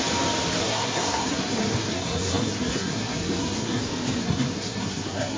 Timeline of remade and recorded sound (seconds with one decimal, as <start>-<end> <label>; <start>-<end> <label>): 0.0-0.6 recorded; 0.6-3.8 remade; 3.8-4.2 recorded; 4.2-5.4 remade